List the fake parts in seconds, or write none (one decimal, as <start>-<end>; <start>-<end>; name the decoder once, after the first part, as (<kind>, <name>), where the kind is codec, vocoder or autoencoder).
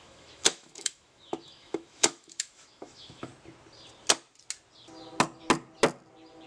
0.0-3.3 (autoencoder, DAC-VAE)